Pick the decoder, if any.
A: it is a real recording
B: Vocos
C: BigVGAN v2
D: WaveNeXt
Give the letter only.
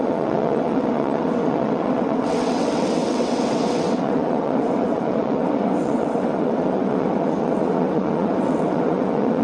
D